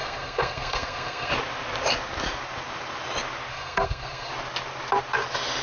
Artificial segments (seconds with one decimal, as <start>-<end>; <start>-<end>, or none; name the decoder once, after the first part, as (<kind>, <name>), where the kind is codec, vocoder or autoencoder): 0.0-1.3 (codec, SNAC); 3.5-4.3